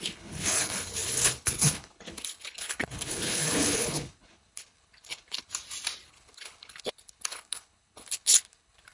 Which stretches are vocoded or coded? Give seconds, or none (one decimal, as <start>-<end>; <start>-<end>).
0.0-5.5; 6.1-8.9

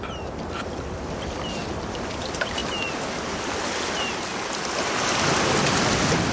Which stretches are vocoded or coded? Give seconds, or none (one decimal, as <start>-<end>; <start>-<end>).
none

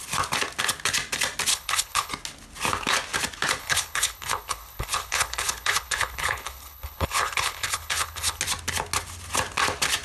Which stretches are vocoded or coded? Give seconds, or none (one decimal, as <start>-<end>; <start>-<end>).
1.5-2.1; 3.6-8.4

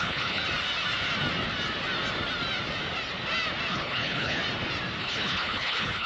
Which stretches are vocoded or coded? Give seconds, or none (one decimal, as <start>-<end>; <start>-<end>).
0.0-0.4; 3.7-4.4; 5.0-6.1